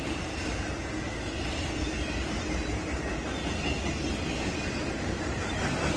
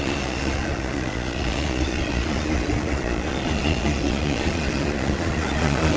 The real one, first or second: first